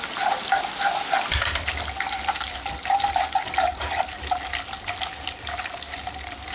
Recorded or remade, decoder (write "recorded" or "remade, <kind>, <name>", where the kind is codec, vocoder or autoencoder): recorded